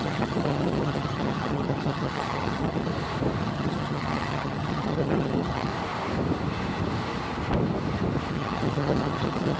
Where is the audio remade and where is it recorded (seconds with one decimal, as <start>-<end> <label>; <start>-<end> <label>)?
0.0-2.9 remade; 2.9-3.4 recorded; 3.4-5.7 remade; 5.7-8.3 recorded; 8.3-9.6 remade